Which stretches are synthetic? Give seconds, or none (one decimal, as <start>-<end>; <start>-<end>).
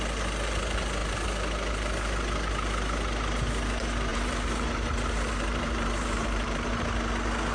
4.1-6.7